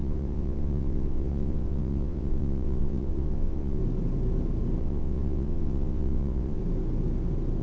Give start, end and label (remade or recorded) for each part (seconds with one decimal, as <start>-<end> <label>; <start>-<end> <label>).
0.0-3.8 remade; 3.8-4.8 recorded; 4.8-6.6 remade; 6.6-7.6 recorded

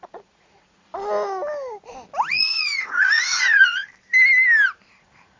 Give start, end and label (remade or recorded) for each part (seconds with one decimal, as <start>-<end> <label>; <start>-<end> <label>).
0.0-0.9 remade; 0.9-2.3 recorded; 2.3-3.9 remade; 3.9-4.9 recorded; 4.9-5.4 remade

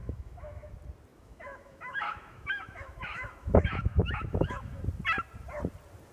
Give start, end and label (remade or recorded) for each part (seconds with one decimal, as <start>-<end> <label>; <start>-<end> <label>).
0.0-0.7 remade; 0.7-1.1 recorded; 1.1-4.8 remade; 4.8-6.1 recorded